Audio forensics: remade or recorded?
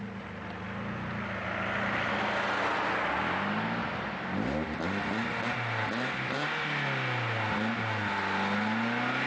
recorded